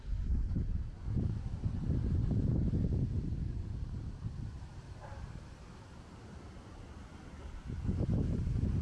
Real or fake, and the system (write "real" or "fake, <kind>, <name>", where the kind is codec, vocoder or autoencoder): real